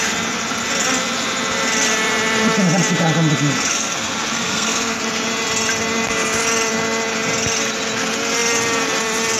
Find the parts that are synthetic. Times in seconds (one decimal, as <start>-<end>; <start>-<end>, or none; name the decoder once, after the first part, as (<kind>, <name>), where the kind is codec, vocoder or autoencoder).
3.7-5.0 (codec, SNAC)